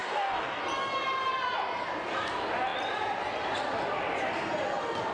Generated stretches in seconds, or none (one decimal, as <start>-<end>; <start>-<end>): 0.0-0.6